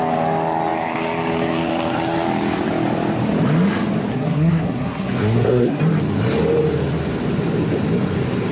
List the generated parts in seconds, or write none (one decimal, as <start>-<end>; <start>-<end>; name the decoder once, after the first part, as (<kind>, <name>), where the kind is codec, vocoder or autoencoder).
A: 4.1-5.8 (codec, SNAC)